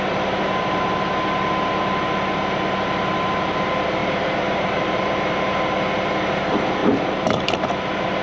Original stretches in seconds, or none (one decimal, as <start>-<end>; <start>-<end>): 0.0-4.0; 5.1-6.8; 7.5-8.2